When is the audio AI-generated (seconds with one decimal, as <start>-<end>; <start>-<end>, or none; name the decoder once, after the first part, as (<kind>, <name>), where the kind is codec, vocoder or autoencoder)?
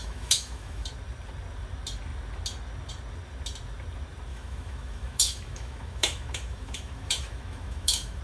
0.0-0.9 (autoencoder, DAC-VAE); 4.3-8.2